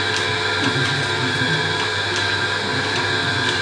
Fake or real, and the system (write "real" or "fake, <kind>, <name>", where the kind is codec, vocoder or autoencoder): real